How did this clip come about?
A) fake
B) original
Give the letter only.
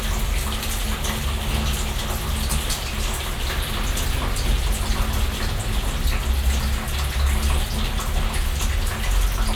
B